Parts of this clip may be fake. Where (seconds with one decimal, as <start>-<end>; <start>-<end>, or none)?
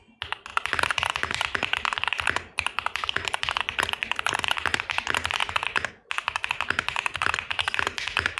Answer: 0.5-3.8